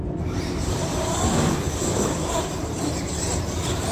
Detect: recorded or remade remade